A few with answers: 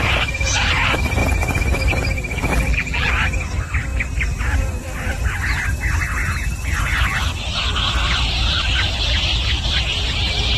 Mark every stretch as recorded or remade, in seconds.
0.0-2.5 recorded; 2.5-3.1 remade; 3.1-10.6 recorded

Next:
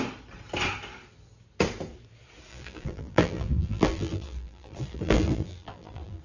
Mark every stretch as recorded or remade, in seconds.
0.0-2.5 recorded; 2.5-6.2 remade

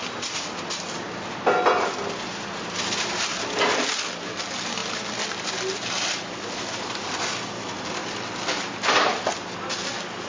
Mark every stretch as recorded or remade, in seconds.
0.0-10.3 recorded

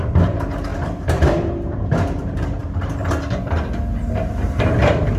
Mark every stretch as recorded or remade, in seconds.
0.0-2.6 remade; 2.6-4.0 recorded; 4.0-5.2 remade

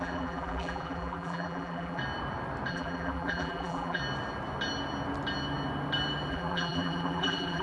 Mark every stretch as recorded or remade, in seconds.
0.0-2.0 remade; 2.0-2.7 recorded; 2.7-4.0 remade; 4.0-6.3 recorded; 6.3-7.6 remade

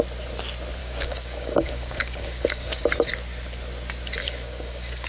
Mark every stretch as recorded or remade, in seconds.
0.0-0.8 recorded; 0.8-2.8 remade; 2.8-4.2 recorded; 4.2-5.1 remade

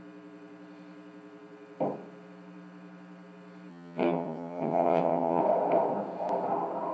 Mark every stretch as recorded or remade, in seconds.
0.0-3.7 recorded; 3.7-5.4 remade; 5.4-6.9 recorded

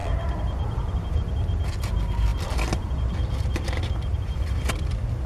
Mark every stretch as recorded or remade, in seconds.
0.0-5.3 recorded